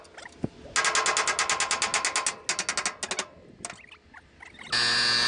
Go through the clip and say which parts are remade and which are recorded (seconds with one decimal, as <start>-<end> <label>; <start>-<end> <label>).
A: 0.0-5.3 recorded